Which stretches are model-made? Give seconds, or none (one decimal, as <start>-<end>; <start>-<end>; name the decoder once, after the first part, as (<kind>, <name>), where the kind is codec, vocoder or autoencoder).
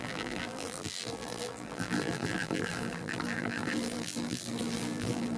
0.0-5.4 (vocoder, BigVGAN v2)